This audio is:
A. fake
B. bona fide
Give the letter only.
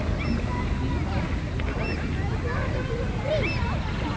B